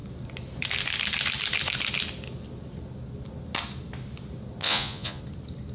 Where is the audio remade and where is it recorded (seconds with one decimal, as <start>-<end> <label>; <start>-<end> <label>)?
0.0-4.6 recorded; 4.6-5.2 remade; 5.2-5.7 recorded